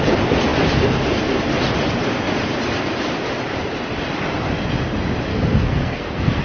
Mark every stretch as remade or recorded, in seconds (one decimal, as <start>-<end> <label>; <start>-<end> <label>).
0.0-5.3 recorded; 5.3-6.4 remade